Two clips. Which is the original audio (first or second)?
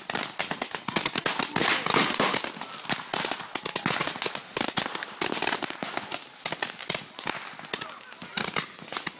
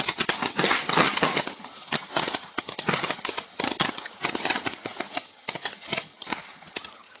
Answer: first